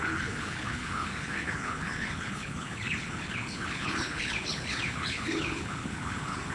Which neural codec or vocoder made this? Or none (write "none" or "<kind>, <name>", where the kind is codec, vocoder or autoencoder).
codec, HILCodec